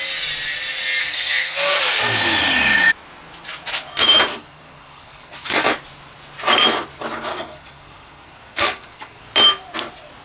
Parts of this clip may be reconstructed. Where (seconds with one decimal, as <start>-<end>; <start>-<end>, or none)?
1.0-1.8; 4.3-5.7; 7.3-9.2